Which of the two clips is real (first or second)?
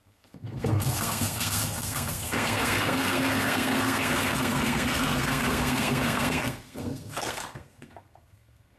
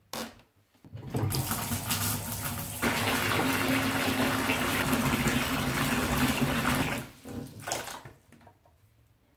second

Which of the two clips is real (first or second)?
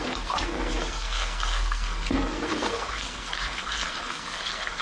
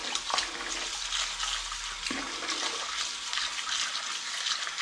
second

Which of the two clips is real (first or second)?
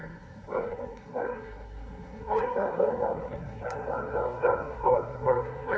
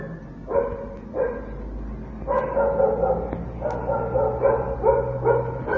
second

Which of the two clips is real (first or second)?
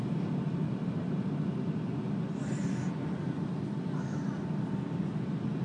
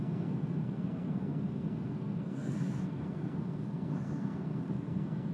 first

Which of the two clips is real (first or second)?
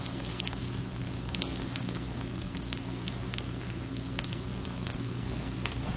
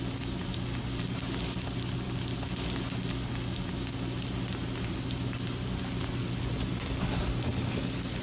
second